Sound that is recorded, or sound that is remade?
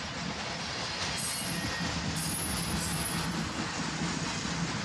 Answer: recorded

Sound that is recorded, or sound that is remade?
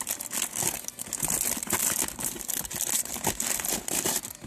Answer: recorded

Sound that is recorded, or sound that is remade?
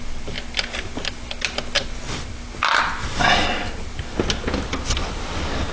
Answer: recorded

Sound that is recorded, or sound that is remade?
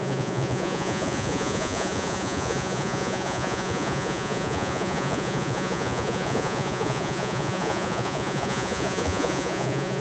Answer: remade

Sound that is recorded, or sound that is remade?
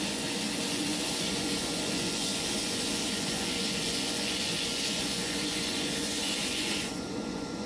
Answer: remade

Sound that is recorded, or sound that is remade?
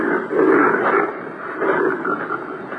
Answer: recorded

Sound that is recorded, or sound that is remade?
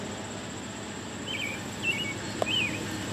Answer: recorded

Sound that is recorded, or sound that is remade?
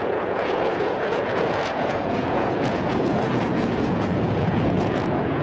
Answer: remade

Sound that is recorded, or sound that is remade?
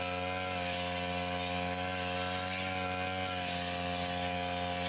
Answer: recorded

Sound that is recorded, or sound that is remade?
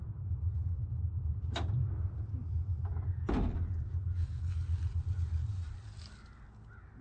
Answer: recorded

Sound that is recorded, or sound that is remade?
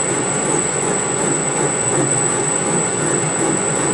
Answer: remade